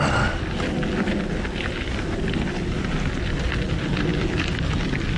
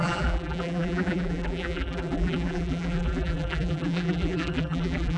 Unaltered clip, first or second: first